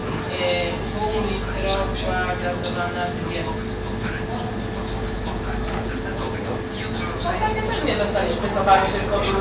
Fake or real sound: real